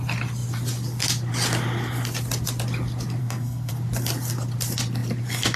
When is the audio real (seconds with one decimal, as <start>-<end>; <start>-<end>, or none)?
0.0-3.2; 3.7-5.6